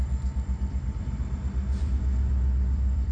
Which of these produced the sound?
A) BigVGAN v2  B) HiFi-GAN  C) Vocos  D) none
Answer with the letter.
A